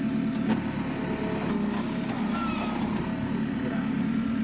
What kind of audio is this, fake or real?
real